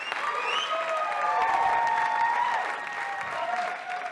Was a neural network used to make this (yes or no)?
no